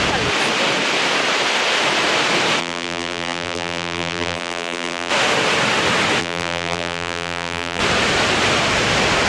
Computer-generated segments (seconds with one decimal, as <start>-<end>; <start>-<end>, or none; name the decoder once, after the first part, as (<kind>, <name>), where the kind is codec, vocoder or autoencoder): 2.6-5.1 (vocoder, BigVGAN v2); 6.2-7.8